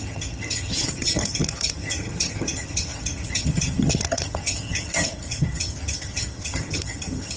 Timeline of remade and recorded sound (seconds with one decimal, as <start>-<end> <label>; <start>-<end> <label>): 0.0-7.4 remade